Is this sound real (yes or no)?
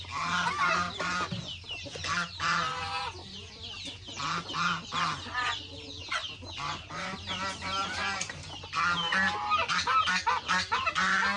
yes